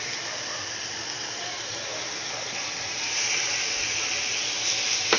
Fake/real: real